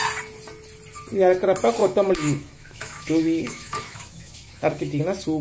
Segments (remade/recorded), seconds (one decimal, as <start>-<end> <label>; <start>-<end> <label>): 0.0-1.8 recorded; 1.8-5.0 remade; 5.0-5.4 recorded